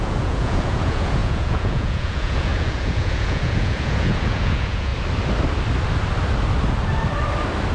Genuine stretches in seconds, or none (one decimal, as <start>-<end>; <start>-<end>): 4.9-7.7